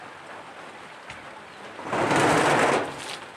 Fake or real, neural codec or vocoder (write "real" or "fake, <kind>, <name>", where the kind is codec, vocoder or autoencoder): real